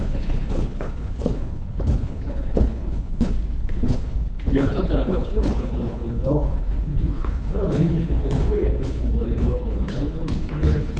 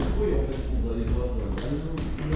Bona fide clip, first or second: second